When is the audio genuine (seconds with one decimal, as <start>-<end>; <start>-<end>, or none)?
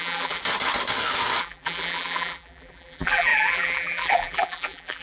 0.4-1.4